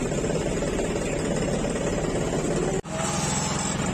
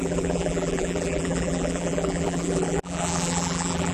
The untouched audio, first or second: first